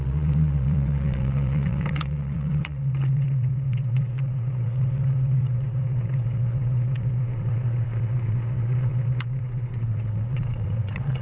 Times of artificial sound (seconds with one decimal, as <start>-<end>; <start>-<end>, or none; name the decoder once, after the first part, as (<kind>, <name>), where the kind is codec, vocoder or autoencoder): 0.0-11.2 (vocoder, WaveNeXt)